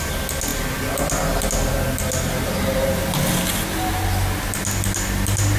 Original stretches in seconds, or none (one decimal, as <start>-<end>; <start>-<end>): 0.0-5.6